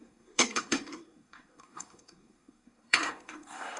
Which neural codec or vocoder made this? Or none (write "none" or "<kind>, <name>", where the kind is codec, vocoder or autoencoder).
codec, SNAC